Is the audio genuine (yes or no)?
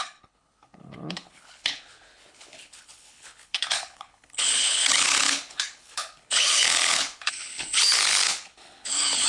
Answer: no